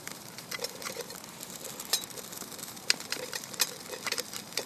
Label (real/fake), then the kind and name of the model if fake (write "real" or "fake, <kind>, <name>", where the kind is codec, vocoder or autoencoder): fake, vocoder, BigVGAN v2